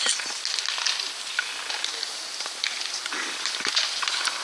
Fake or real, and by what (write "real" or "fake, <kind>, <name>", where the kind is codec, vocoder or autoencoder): real